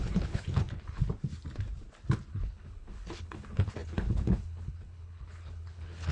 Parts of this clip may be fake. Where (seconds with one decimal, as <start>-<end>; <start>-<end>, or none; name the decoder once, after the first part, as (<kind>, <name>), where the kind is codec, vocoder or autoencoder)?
0.0-1.0 (codec, HILCodec); 2.3-6.1